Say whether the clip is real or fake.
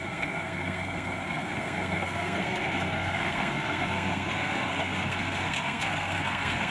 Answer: fake